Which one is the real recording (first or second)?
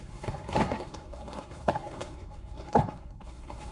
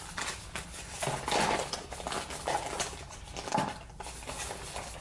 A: second